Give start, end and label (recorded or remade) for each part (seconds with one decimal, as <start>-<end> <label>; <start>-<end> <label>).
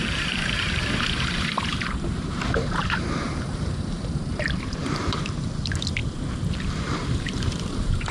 0.0-6.0 remade; 6.0-6.7 recorded; 6.7-8.1 remade